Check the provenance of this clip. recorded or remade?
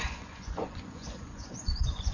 remade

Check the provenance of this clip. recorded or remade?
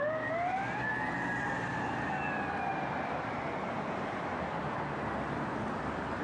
recorded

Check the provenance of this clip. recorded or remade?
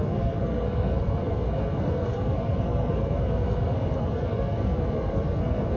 remade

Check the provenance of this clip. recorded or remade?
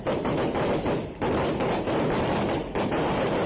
recorded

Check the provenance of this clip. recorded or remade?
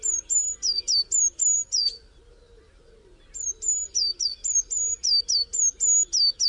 recorded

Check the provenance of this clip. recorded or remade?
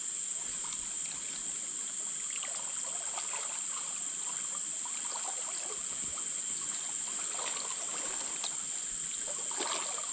recorded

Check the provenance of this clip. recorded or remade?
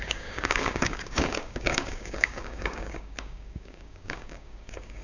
remade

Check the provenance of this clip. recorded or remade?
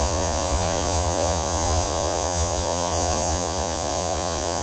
remade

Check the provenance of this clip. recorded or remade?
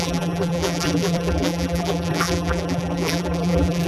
remade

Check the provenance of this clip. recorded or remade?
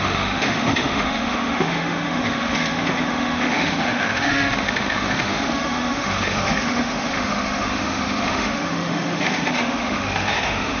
remade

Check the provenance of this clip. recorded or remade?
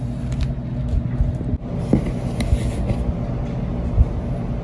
recorded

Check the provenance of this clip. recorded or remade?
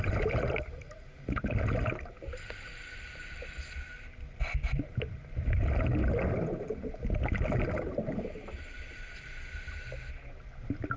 recorded